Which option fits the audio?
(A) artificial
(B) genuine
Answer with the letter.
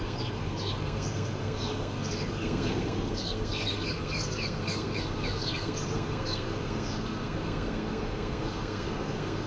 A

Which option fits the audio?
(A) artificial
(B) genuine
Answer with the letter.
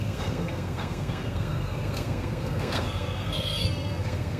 A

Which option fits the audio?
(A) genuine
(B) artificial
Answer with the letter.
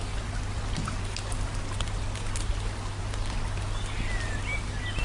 A